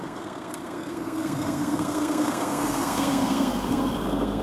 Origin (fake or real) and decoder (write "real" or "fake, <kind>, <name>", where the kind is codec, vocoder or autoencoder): fake, codec, SNAC